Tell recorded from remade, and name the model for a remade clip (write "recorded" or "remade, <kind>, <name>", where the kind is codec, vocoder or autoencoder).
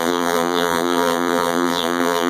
remade, vocoder, BigVGAN v2